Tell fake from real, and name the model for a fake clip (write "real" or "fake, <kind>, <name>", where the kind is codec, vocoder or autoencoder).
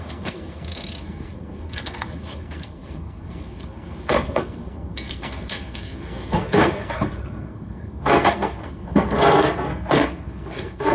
fake, codec, SNAC